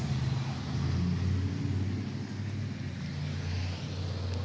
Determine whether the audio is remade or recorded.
recorded